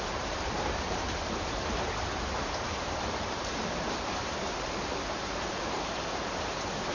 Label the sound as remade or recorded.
remade